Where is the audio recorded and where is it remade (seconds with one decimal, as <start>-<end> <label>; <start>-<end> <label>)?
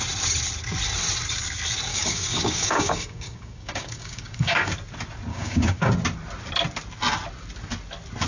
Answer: 0.0-1.9 recorded; 1.9-4.7 remade; 4.7-5.3 recorded; 5.3-5.9 remade; 5.9-8.3 recorded